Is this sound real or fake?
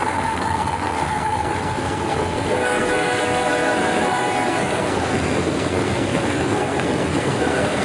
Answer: fake